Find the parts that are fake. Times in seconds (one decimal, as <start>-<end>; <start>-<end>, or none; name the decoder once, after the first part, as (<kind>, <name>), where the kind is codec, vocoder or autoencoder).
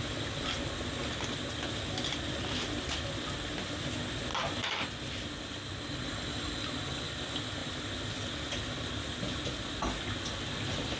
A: none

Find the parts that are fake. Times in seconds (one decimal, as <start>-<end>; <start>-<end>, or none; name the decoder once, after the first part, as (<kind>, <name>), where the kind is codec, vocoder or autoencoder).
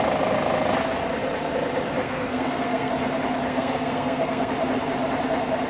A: 2.0-2.9 (codec, SNAC); 3.5-4.5